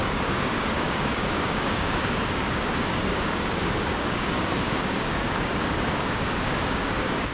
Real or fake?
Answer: fake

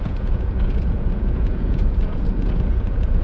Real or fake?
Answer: fake